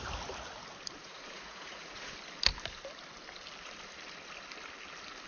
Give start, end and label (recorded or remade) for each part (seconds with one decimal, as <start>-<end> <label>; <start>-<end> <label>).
0.0-1.0 recorded; 1.0-2.1 remade; 2.1-5.3 recorded